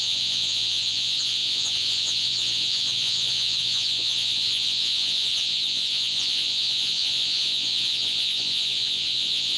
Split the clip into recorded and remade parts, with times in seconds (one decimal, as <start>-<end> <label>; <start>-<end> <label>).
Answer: 0.0-9.6 remade